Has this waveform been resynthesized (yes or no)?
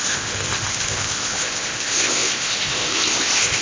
yes